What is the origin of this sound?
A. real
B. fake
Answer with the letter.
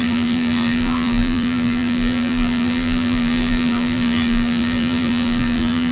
B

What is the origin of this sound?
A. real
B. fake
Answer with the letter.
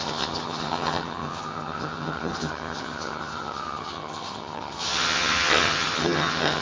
B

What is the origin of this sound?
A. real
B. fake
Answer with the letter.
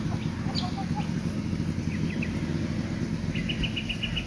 A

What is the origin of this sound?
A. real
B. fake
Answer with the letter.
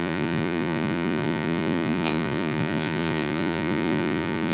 B